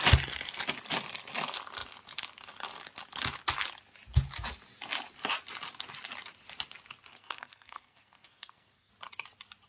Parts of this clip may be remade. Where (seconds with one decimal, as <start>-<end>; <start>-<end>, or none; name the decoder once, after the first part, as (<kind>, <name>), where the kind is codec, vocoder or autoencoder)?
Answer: 7.1-8.9 (codec, SNAC)